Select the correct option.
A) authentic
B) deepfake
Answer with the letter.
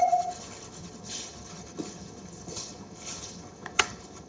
B